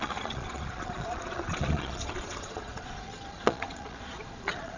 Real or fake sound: fake